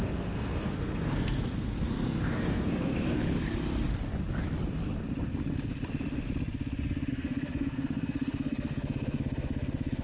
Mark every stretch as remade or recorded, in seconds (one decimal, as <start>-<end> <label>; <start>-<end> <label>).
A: 0.0-3.2 remade; 3.2-7.1 recorded; 7.1-10.0 remade